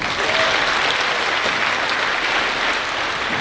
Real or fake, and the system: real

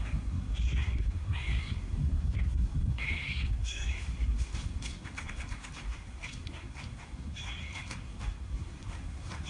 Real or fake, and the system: fake, codec, SNAC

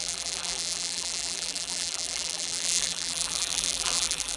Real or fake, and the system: fake, vocoder, BigVGAN v2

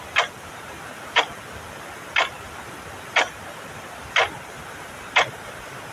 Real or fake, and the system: real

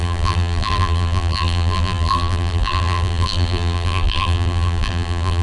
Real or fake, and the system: fake, vocoder, BigVGAN v2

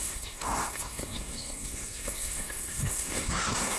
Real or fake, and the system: fake, codec, SNAC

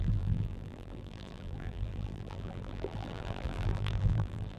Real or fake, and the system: fake, vocoder, BigVGAN v2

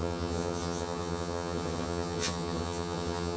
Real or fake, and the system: fake, vocoder, HiFi-GAN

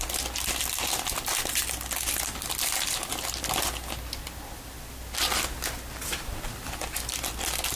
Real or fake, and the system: real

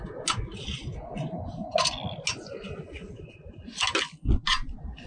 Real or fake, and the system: real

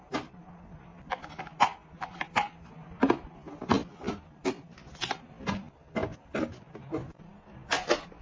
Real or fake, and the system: real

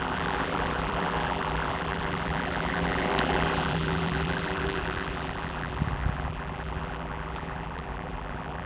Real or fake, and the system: fake, vocoder, BigVGAN v2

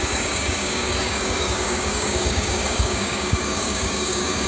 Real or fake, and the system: fake, codec, DAC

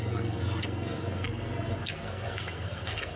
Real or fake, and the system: fake, codec, SNAC